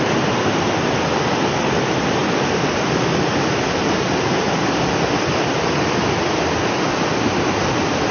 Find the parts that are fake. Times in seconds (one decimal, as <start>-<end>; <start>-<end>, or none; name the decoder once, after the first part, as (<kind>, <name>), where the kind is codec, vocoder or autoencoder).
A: none